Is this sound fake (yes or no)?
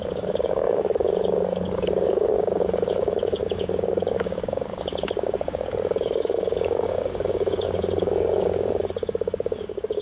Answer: yes